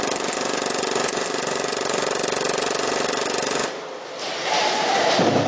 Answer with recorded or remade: recorded